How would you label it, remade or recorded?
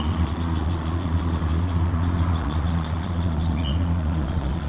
remade